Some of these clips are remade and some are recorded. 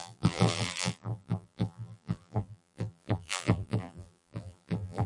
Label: remade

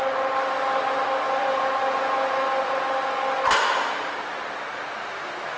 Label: recorded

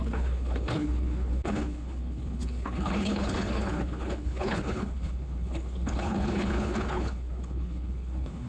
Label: remade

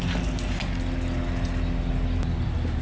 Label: recorded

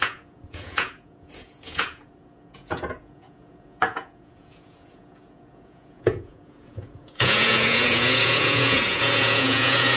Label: remade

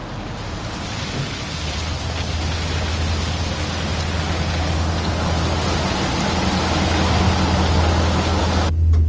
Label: recorded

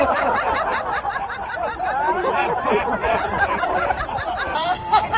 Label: remade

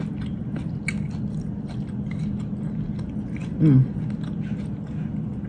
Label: recorded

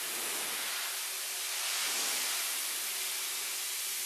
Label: recorded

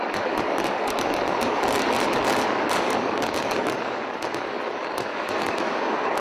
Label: remade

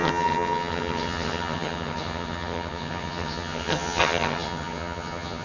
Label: remade